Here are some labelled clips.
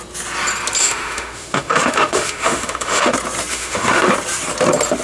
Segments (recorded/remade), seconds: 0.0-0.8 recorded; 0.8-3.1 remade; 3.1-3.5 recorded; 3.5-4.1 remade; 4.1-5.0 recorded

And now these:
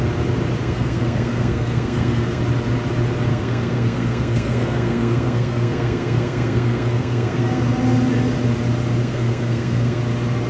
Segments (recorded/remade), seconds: 0.0-0.6 recorded; 0.6-2.4 remade; 2.4-3.3 recorded; 3.3-7.6 remade; 7.6-9.0 recorded; 9.0-10.0 remade; 10.0-10.5 recorded